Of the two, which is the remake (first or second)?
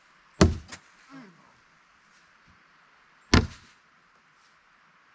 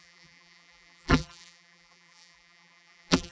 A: second